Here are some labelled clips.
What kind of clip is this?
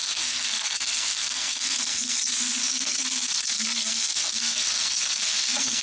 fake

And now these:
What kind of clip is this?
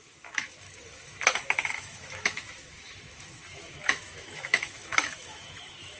fake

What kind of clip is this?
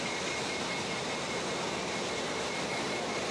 fake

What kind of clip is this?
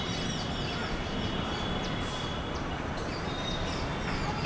real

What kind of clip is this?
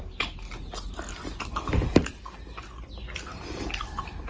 real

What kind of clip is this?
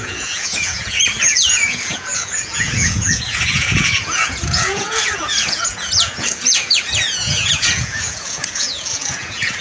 fake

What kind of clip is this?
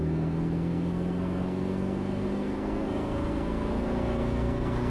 fake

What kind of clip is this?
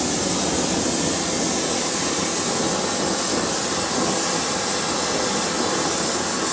real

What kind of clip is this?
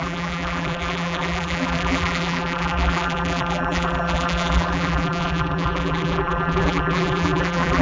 fake